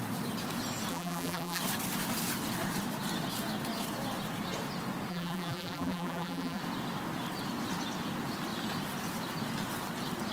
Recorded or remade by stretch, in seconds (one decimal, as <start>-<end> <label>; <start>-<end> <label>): 0.0-0.9 recorded; 0.9-1.6 remade; 1.6-5.1 recorded; 5.1-6.6 remade; 6.6-10.3 recorded